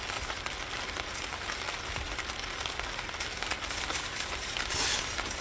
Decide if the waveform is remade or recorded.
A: recorded